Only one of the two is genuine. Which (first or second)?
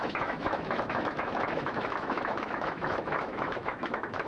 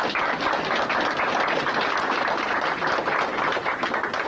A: second